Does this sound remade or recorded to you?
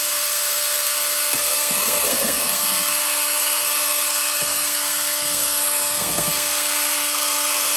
remade